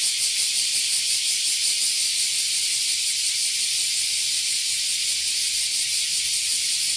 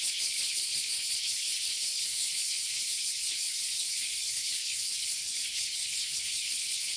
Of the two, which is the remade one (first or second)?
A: second